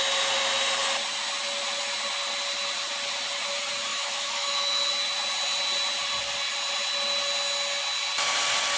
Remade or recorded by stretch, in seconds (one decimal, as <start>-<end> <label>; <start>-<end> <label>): 0.0-3.9 recorded; 3.9-4.9 remade; 4.9-8.8 recorded